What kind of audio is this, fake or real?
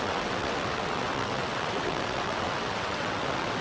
fake